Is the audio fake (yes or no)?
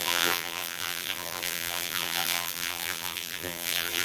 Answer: yes